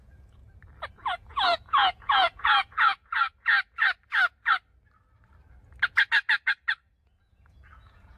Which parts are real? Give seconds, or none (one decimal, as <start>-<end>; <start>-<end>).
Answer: 0.4-0.9; 3.0-7.0